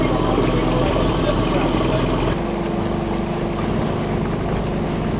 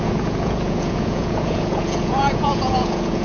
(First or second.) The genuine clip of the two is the first